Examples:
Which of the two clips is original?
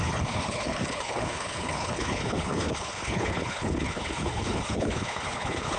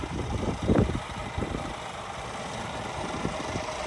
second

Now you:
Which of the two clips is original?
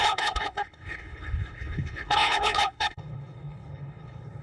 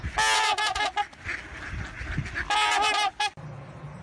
second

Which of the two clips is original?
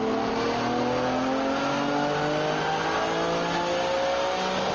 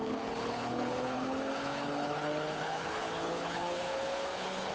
first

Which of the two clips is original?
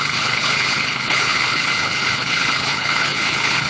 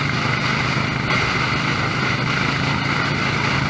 second